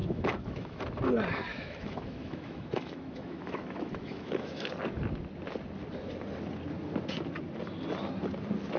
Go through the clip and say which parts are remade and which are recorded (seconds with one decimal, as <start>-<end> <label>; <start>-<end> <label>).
0.0-0.8 remade; 0.8-1.5 recorded; 1.5-4.7 remade; 4.7-8.8 recorded